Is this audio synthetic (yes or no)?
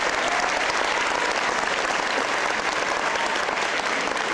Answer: no